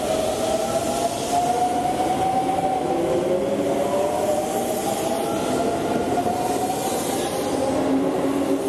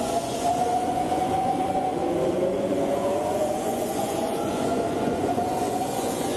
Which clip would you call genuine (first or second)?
first